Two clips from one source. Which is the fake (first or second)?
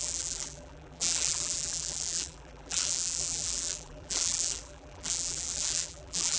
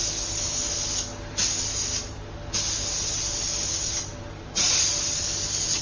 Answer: first